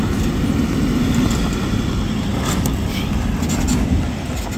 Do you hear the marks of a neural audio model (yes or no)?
no